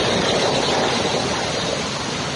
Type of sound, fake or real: real